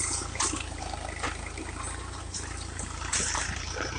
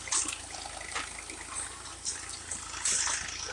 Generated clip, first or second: first